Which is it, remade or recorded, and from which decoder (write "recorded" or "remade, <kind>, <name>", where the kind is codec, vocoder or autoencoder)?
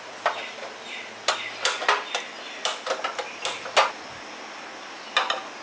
recorded